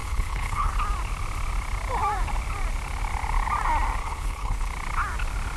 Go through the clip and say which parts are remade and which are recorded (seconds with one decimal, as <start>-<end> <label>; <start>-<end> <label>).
0.0-0.7 remade; 0.7-4.0 recorded; 4.0-4.7 remade; 4.7-5.6 recorded